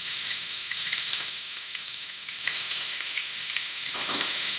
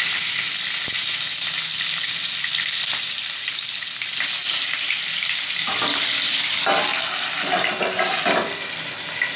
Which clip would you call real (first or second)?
second